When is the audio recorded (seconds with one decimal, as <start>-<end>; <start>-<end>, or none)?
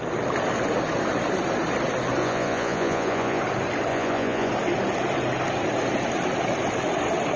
0.0-2.2; 3.4-3.9; 4.5-7.4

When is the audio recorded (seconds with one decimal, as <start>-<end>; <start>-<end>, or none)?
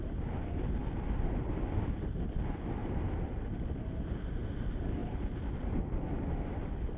0.0-7.0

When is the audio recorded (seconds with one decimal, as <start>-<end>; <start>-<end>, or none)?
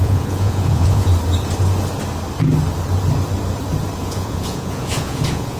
1.1-4.0